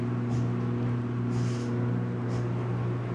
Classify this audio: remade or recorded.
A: recorded